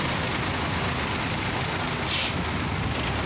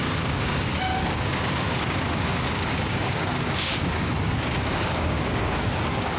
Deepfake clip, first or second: second